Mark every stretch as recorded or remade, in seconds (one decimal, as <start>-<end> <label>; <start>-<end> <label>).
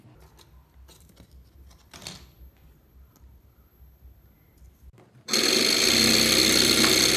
0.0-7.2 recorded